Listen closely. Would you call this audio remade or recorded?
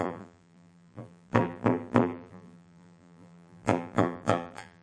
remade